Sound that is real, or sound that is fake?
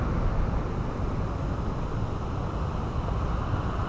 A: real